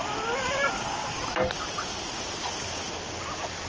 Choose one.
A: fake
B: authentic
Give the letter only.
B